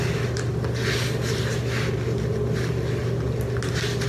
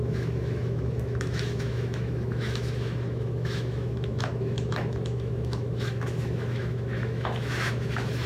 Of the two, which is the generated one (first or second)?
second